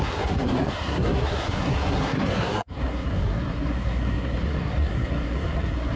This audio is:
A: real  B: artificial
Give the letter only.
B